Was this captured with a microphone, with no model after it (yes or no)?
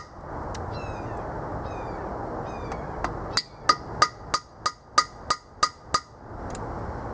yes